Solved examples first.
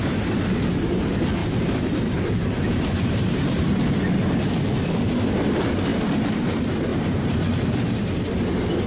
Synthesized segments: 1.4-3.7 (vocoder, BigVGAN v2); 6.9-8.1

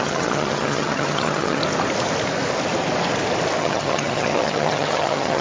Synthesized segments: 0.0-1.6 (vocoder, HiFi-GAN); 3.6-5.4

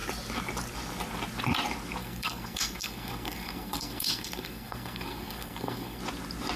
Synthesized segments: 2.0-6.0 (codec, SNAC)

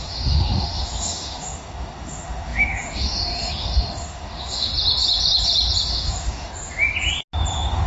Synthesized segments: 0.0-4.7 (autoencoder, DAC-VAE); 5.9-6.5; 7.5-7.9

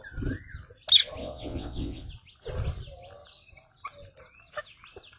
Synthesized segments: 1.2-2.1 (vocoder, WaveNeXt)

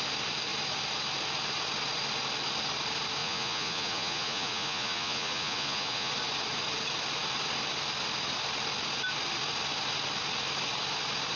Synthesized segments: 3.2-6.1 (vocoder, Vocos)

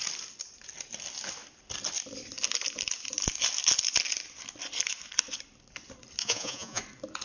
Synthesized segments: 6.2-6.8 (vocoder, Vocos)

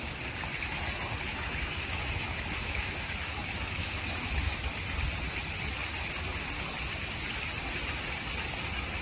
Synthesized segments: 1.3-4.5 (autoencoder, DAC-VAE)